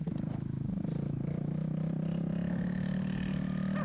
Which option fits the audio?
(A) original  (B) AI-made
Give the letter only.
A